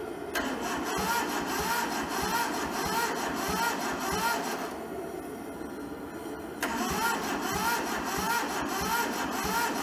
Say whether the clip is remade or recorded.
recorded